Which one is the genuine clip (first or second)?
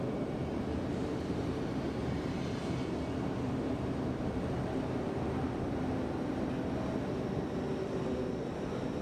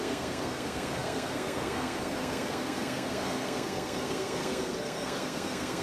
first